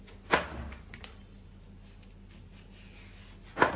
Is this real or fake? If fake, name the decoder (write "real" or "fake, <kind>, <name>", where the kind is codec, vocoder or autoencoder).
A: real